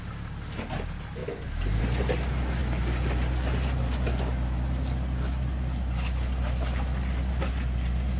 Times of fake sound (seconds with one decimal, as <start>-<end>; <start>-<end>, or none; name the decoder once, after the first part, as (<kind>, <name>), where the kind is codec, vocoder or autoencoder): none